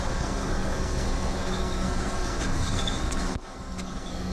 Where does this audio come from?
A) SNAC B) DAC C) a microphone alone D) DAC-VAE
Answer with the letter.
A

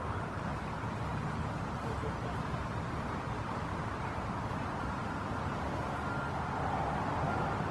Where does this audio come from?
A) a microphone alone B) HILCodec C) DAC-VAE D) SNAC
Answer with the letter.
A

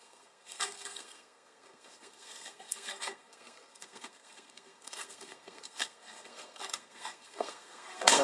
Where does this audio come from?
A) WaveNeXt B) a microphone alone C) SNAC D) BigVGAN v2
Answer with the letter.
C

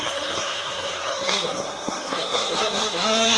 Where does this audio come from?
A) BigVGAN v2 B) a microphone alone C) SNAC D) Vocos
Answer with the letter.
C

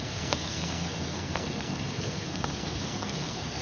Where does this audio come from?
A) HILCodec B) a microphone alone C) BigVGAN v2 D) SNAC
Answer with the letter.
D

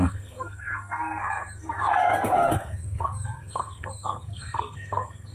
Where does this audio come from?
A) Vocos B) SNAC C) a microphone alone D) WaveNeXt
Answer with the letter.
B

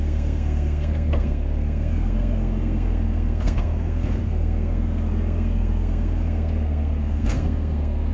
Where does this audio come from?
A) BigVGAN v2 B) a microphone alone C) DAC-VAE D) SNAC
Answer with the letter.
D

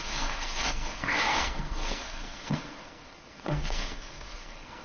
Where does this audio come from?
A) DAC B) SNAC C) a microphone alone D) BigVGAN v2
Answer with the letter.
B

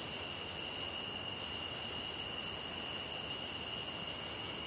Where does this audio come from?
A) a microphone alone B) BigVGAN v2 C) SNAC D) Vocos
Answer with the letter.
A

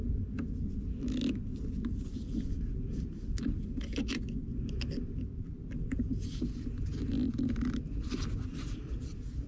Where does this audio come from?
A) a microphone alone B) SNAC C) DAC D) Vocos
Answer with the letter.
A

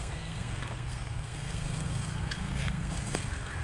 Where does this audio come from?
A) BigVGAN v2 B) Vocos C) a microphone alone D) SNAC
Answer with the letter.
D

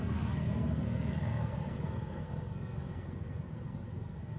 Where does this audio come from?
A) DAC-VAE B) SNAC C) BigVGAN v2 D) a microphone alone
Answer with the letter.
B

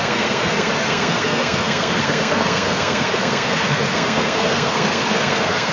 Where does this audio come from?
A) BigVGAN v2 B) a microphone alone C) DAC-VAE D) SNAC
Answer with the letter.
D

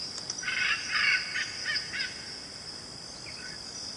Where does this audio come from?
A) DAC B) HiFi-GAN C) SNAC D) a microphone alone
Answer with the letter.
D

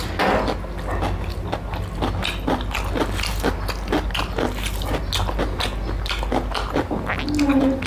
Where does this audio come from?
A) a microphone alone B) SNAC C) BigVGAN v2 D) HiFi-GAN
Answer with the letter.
A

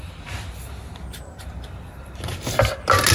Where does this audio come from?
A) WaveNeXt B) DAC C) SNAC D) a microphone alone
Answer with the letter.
D